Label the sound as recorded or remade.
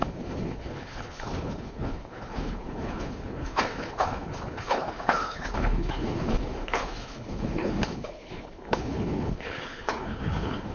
remade